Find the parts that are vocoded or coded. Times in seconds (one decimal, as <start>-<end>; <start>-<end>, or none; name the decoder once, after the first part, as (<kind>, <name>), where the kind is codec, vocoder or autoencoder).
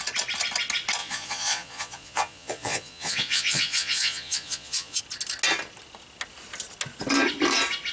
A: 1.0-5.0 (vocoder, Vocos)